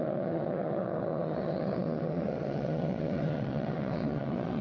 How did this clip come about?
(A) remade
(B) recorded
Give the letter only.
A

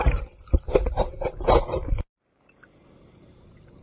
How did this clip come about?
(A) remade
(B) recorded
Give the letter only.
A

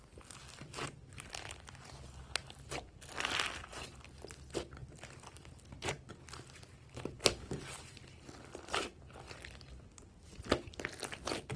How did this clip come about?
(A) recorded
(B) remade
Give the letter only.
A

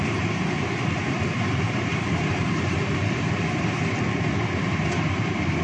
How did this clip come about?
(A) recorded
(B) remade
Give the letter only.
B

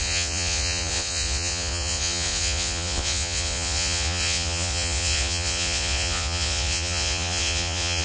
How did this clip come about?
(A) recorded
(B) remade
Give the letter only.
B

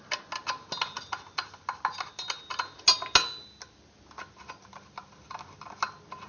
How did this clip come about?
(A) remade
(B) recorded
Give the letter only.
B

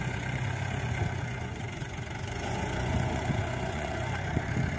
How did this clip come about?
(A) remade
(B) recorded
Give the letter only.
A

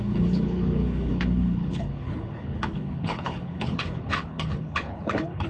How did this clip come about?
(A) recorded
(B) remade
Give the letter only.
B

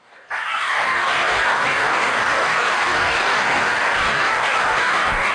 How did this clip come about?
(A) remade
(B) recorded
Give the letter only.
A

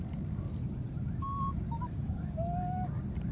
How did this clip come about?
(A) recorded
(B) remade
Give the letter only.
A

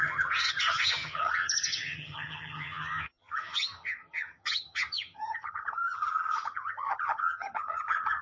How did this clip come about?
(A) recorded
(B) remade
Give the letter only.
B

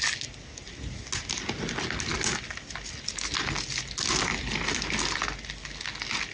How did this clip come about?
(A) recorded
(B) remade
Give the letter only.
A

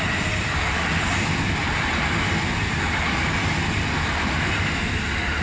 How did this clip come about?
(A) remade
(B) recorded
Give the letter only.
B